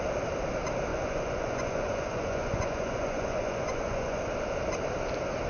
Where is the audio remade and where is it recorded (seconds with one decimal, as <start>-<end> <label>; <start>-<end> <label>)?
0.0-0.9 recorded; 0.9-4.2 remade; 4.2-5.5 recorded